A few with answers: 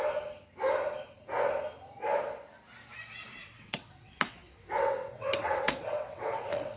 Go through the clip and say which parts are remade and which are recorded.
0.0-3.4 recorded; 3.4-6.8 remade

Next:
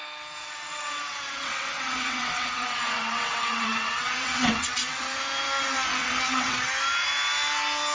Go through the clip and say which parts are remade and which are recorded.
0.0-0.4 recorded; 0.4-5.0 remade; 5.0-6.0 recorded; 6.0-6.7 remade; 6.7-7.9 recorded

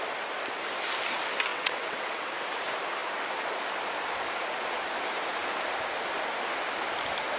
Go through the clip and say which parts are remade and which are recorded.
0.0-1.5 recorded; 1.5-2.3 remade; 2.3-7.4 recorded

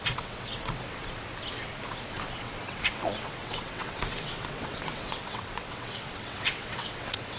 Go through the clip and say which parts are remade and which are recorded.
0.0-1.0 remade; 1.0-2.1 recorded; 2.1-7.4 remade

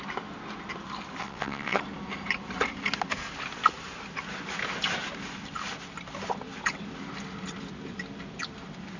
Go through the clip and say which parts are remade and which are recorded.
0.0-1.2 recorded; 1.2-1.8 remade; 1.8-9.0 recorded